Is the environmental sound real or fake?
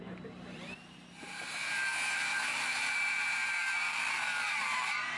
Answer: fake